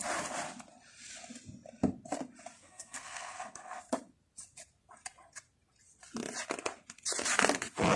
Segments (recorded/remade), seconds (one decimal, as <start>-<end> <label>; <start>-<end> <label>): 0.0-2.6 recorded; 2.6-3.8 remade; 3.8-8.0 recorded